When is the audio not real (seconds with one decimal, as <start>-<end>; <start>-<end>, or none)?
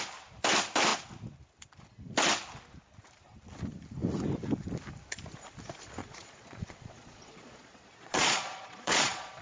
6.0-9.4